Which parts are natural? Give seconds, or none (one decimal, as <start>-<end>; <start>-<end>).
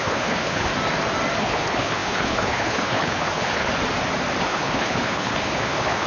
0.7-1.4; 3.7-4.4